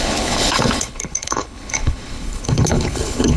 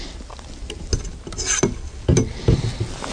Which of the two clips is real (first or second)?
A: second